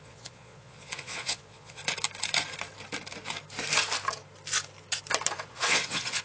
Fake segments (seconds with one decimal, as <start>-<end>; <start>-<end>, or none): 0.0-1.8; 5.5-6.2